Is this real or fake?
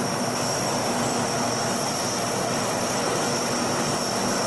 real